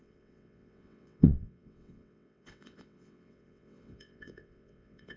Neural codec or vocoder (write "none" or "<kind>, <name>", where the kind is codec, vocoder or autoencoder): vocoder, WaveNeXt